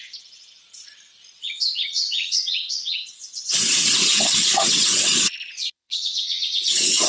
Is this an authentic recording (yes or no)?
no